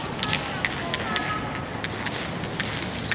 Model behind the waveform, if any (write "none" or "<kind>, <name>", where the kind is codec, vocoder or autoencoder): none